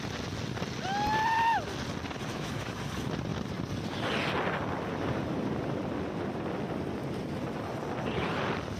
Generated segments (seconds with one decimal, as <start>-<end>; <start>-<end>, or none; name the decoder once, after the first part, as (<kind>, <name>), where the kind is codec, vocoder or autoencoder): 2.3-2.8 (autoencoder, DAC-VAE)